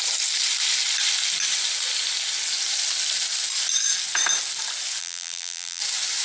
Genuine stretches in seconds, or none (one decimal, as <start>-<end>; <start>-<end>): 0.0-5.0; 5.8-6.2